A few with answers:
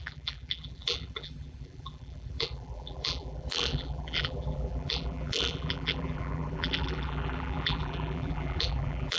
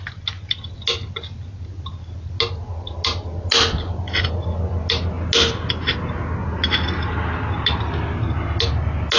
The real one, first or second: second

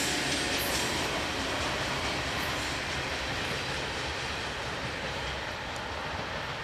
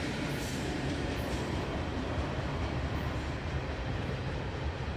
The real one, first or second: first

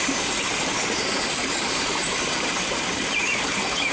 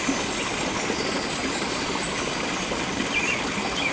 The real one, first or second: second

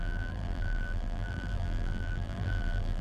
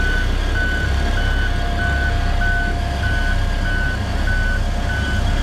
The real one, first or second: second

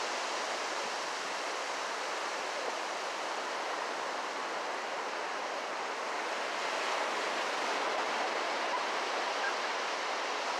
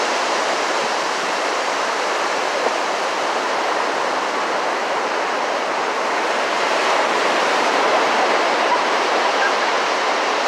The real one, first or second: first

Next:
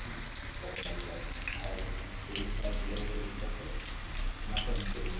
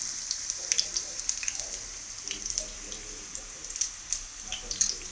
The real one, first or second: first